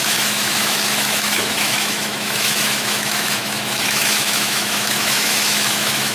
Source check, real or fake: fake